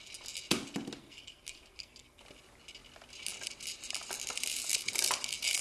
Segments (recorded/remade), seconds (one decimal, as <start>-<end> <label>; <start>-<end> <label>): 0.0-1.0 recorded; 1.0-2.2 remade; 2.2-5.6 recorded